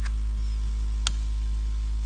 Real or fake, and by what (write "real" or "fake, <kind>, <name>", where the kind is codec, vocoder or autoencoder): real